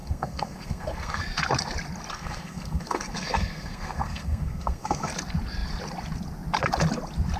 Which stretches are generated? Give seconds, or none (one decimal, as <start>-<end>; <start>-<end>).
0.0-1.2; 2.1-5.1